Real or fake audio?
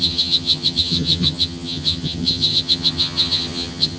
fake